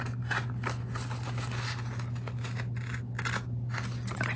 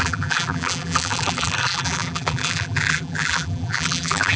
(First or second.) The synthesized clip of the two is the second